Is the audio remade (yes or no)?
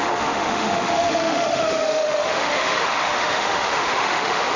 yes